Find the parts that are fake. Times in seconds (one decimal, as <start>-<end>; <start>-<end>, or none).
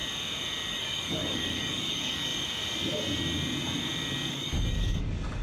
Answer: 0.7-2.3; 4.3-5.4